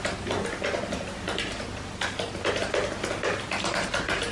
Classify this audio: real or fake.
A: real